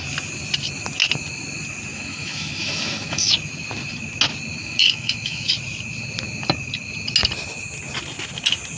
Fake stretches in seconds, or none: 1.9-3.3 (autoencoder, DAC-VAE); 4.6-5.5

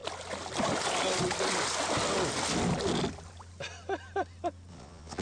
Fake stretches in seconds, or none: 4.7-5.2 (vocoder, Vocos)

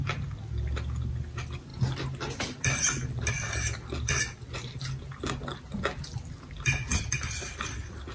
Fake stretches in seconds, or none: none